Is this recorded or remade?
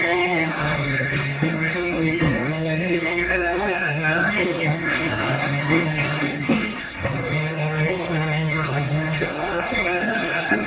remade